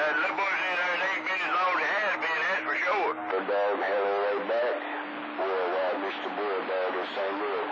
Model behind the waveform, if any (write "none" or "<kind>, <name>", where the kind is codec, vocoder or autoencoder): none